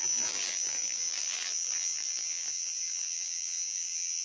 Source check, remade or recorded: remade